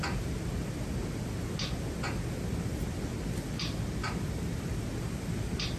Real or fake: real